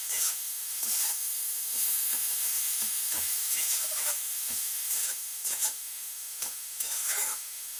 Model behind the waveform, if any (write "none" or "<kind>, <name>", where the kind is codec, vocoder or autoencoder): autoencoder, DAC-VAE